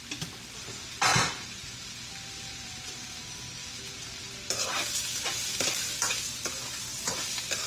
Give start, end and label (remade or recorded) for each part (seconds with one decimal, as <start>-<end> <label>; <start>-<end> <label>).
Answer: 0.0-7.7 recorded